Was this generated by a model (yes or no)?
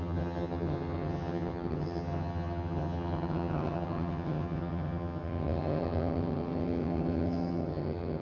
yes